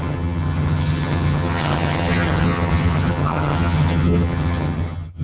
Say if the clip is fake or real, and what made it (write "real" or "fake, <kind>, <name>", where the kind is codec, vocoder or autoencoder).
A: fake, vocoder, HiFi-GAN